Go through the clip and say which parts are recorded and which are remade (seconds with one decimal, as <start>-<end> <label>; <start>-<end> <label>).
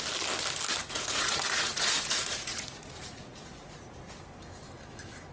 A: 0.0-0.8 recorded; 0.8-4.0 remade; 4.0-5.3 recorded